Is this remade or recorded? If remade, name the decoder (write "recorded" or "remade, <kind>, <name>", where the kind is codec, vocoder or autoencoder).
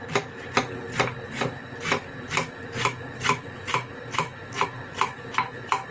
recorded